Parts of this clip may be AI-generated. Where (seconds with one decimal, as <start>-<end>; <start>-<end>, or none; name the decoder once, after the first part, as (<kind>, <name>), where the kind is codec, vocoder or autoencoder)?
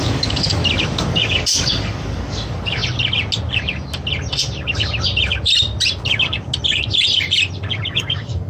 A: 0.0-0.6 (codec, DAC); 1.1-2.8; 7.9-8.5